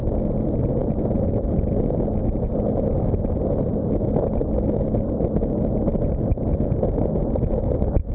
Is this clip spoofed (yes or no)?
no